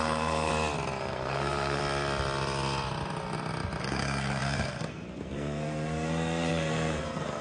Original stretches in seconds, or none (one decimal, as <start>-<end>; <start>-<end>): 0.5-1.0; 1.8-3.8